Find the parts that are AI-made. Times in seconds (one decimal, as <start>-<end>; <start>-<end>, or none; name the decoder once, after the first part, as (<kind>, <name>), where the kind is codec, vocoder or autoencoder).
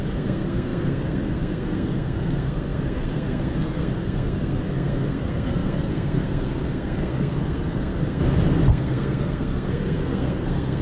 0.0-8.2 (codec, SNAC); 8.7-10.8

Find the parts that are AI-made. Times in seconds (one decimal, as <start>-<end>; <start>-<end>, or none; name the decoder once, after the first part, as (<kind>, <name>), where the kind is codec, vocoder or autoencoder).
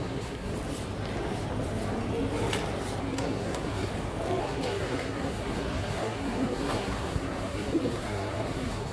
0.0-0.5 (codec, SNAC); 3.0-3.9; 4.4-8.9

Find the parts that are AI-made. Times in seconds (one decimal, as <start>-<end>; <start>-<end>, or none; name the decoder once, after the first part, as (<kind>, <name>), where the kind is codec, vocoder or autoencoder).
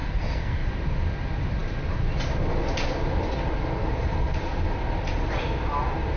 0.0-0.7 (codec, SNAC)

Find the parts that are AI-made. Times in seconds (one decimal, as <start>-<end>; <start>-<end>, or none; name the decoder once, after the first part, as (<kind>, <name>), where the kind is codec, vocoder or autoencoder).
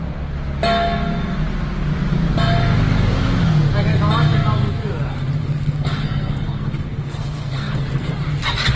5.4-8.1 (codec, SNAC)